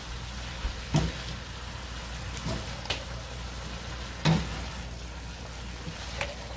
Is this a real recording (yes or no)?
yes